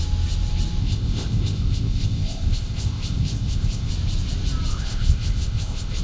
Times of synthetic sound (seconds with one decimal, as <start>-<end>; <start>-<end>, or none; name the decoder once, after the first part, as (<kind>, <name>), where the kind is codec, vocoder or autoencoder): 0.8-3.9 (codec, ZipCodec); 4.7-6.0